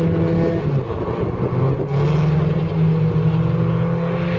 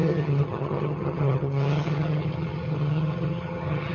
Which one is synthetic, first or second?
second